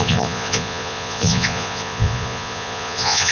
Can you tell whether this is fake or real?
fake